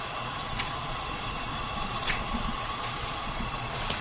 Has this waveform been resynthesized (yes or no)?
yes